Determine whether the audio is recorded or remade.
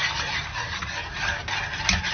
recorded